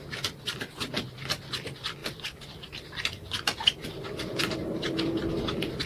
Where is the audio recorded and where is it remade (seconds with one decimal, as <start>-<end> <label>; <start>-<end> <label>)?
0.0-5.9 recorded